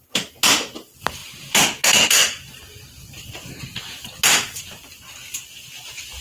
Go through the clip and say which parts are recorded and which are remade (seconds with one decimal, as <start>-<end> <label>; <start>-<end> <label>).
0.0-6.2 recorded